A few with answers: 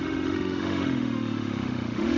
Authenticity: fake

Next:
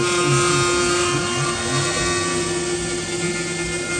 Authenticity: real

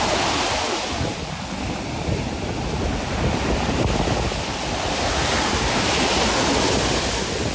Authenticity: real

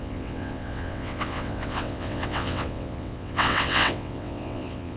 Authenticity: fake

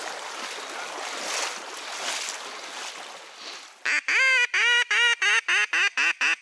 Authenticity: real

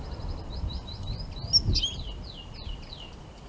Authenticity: real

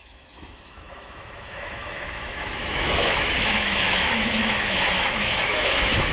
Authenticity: fake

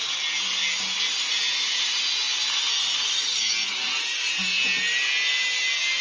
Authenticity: real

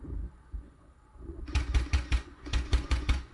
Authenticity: fake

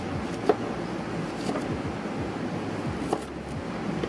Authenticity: real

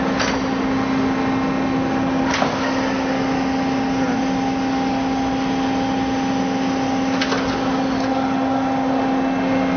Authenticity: real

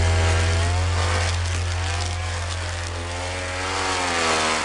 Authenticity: real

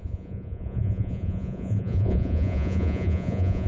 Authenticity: fake